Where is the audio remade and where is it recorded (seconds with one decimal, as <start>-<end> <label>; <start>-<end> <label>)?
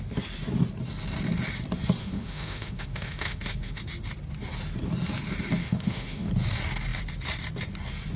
0.0-2.0 recorded; 2.0-3.8 remade; 3.8-5.6 recorded; 5.6-6.3 remade; 6.3-8.2 recorded